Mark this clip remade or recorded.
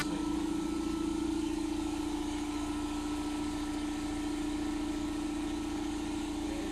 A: remade